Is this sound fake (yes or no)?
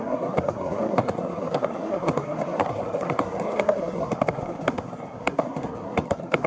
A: yes